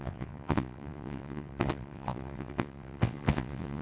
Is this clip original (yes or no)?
no